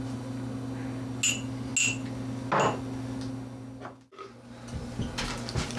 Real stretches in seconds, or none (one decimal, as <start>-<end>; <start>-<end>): 0.0-5.8